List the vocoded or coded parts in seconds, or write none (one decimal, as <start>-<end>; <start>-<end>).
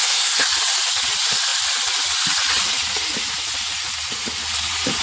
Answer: 0.0-0.5